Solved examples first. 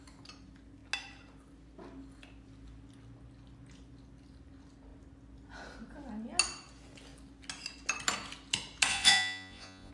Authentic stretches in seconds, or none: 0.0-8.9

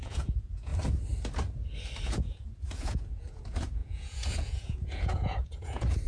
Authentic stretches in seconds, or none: 0.7-2.0

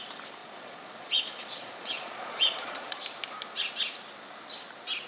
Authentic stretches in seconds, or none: 0.0-0.4; 3.0-5.1

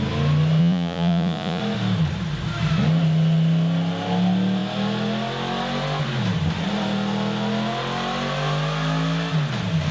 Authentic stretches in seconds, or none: 0.0-0.6; 1.6-9.9